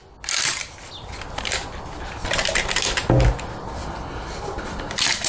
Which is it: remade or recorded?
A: recorded